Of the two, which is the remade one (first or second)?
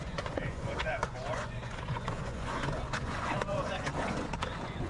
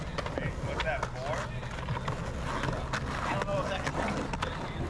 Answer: first